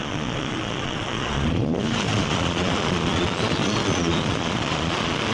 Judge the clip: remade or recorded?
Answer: remade